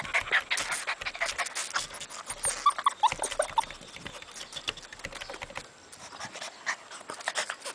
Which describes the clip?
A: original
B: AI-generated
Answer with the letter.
A